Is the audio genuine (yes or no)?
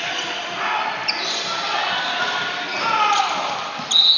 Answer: yes